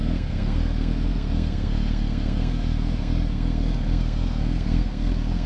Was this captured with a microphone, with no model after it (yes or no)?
no